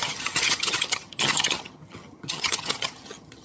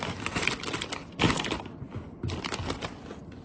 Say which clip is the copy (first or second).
first